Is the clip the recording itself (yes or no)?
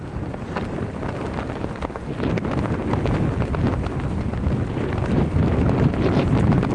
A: yes